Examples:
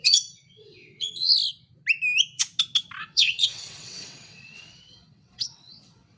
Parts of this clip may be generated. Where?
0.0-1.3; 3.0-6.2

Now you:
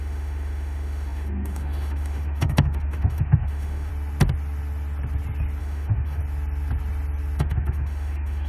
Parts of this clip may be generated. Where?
0.0-3.9; 5.6-6.2; 7.4-8.5

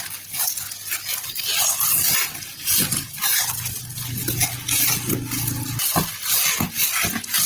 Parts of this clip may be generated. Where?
none

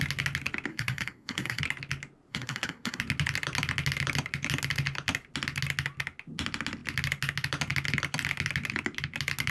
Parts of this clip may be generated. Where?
0.7-1.6; 2.3-3.0

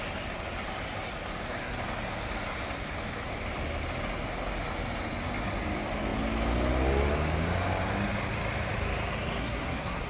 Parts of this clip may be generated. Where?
9.4-10.1